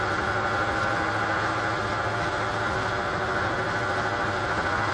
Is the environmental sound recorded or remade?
recorded